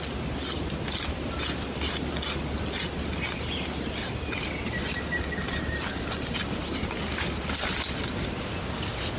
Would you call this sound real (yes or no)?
yes